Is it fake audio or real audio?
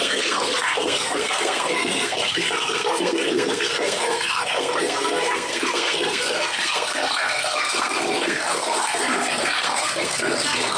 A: fake